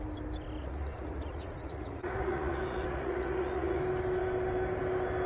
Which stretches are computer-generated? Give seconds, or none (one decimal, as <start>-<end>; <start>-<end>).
0.6-3.8